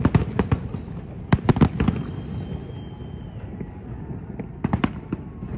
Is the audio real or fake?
real